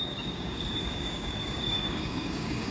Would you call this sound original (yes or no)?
no